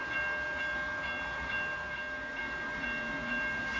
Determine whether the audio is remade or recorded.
recorded